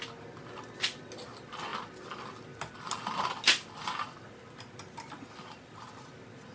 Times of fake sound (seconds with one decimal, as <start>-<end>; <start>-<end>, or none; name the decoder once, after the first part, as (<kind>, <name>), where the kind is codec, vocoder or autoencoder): none